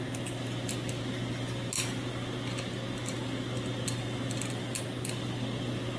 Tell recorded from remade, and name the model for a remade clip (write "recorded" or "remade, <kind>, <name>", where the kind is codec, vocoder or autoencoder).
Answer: recorded